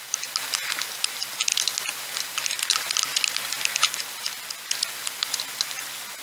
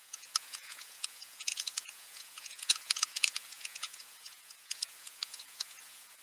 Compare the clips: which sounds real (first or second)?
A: first